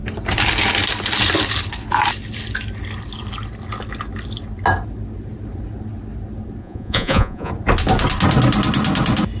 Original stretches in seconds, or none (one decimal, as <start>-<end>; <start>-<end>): 0.0-6.6; 7.5-9.4